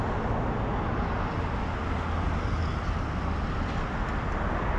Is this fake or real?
real